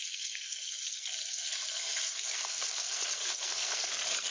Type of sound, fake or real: fake